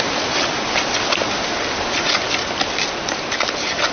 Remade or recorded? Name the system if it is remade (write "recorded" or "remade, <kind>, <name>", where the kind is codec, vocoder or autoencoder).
recorded